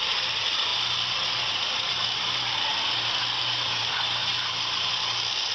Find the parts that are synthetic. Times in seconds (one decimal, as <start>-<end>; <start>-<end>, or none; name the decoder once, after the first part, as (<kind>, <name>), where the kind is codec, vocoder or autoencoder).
none